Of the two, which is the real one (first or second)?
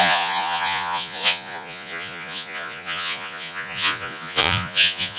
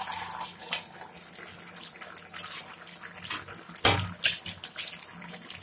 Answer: second